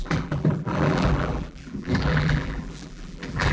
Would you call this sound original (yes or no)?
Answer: no